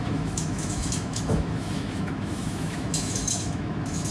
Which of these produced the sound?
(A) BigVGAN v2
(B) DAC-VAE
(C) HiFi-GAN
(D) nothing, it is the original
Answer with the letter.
B